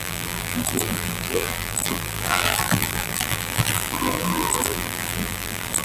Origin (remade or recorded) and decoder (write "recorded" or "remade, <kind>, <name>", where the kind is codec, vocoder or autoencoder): remade, vocoder, BigVGAN v2